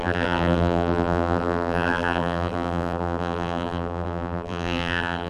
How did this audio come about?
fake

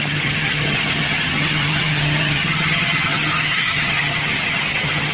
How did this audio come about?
fake